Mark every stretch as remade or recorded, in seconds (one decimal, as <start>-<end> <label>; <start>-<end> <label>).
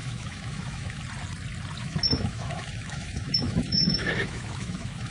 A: 0.0-1.0 remade; 1.0-1.8 recorded; 1.8-5.1 remade